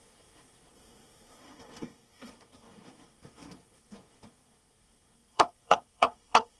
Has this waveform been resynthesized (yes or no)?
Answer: yes